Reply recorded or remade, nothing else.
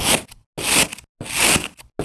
recorded